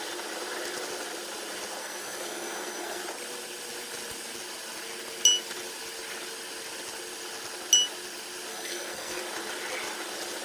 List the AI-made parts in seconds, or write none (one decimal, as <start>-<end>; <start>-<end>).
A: 1.8-3.0; 8.5-9.2